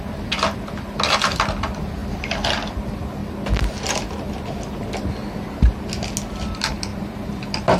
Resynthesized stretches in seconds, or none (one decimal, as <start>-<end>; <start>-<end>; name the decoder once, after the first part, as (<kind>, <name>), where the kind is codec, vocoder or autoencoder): 3.2-3.9 (vocoder, BigVGAN v2)